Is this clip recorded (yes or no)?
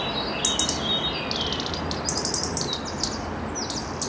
yes